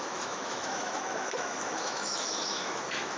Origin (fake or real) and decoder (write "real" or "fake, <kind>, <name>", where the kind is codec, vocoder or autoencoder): fake, autoencoder, DAC-VAE